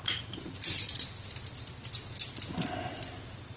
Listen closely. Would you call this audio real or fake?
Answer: real